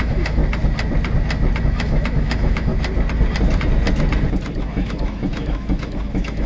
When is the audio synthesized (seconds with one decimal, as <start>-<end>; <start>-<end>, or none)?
0.0-0.4; 1.6-2.7; 4.6-6.5